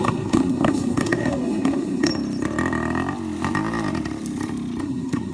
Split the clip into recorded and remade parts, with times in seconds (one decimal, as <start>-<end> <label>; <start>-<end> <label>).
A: 0.0-2.1 remade; 2.1-4.8 recorded; 4.8-5.3 remade